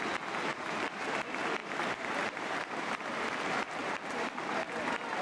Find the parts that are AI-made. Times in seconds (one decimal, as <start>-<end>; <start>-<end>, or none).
0.5-1.2; 1.6-2.9; 3.8-4.8